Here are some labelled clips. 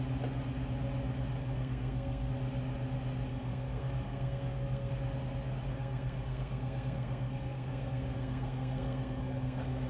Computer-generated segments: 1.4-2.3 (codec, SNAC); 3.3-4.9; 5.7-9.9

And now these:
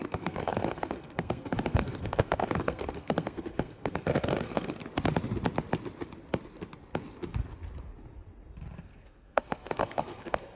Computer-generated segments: 0.0-4.8 (codec, SNAC); 8.8-10.6

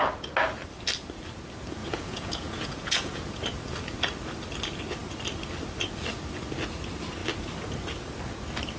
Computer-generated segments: 1.8-3.4 (vocoder, Vocos)